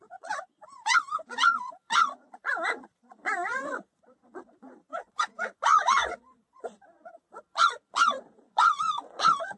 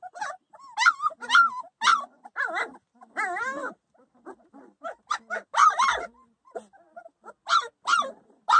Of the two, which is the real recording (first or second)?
second